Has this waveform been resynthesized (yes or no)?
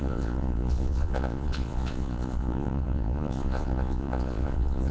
yes